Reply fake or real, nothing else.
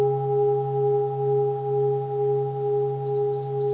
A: real